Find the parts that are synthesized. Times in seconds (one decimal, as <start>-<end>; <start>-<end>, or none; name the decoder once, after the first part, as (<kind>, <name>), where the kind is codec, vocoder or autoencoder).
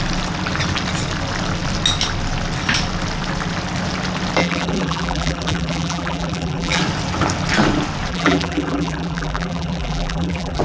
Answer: 4.4-6.8 (vocoder, BigVGAN v2); 8.1-10.6